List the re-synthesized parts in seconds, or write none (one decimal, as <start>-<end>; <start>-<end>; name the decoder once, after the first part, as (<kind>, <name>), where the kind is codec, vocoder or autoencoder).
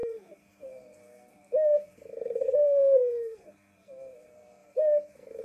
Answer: 0.0-5.4 (codec, SNAC)